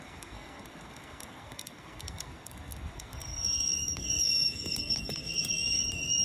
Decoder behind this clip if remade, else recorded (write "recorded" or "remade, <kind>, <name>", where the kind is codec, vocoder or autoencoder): remade, codec, SNAC